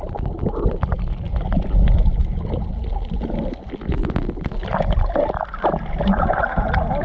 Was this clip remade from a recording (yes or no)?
no